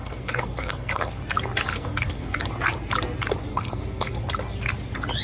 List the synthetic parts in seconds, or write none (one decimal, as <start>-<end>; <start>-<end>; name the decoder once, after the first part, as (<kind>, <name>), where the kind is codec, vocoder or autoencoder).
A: 0.0-1.1 (codec, SNAC); 1.7-2.5; 3.5-4.2